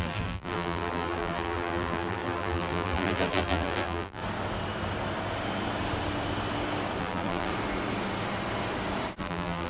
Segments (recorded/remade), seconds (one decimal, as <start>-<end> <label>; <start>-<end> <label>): 0.0-4.2 remade; 4.2-7.0 recorded; 7.0-7.5 remade; 7.5-9.2 recorded; 9.2-9.7 remade